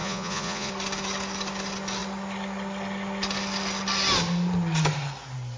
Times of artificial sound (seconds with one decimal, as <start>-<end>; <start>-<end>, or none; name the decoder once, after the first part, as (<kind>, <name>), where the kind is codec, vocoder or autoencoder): 0.0-0.7 (vocoder, Vocos)